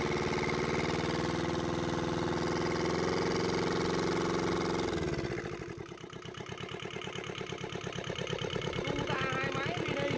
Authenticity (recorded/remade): recorded